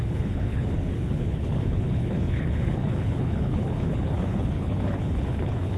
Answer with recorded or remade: remade